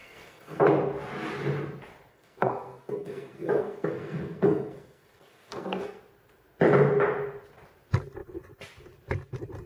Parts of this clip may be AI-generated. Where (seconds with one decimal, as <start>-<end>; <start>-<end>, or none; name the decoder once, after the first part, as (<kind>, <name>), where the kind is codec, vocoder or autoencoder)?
0.0-0.6 (codec, SNAC); 2.1-6.0